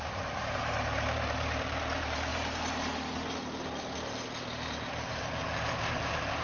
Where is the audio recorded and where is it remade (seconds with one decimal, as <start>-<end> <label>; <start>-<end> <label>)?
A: 0.0-2.3 remade; 2.3-5.3 recorded; 5.3-6.4 remade